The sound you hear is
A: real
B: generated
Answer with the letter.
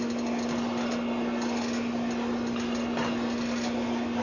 A